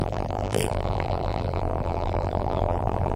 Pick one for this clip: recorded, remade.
remade